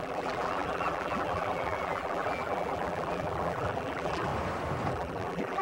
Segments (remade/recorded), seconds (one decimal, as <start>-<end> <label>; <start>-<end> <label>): 0.0-4.3 remade; 4.3-4.9 recorded; 4.9-5.6 remade